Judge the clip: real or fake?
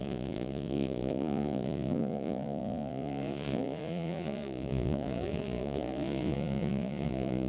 fake